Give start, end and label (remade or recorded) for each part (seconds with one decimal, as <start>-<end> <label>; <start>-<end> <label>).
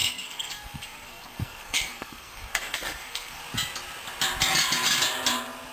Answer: 0.0-3.4 remade; 3.4-5.7 recorded